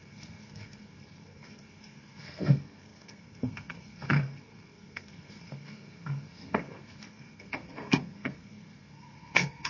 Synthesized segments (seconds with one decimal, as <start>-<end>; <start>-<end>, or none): 0.0-9.7